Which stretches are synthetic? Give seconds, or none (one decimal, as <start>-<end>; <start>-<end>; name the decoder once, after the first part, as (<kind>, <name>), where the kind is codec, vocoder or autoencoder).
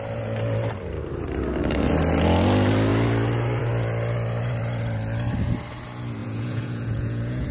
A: 6.2-7.5 (vocoder, Vocos)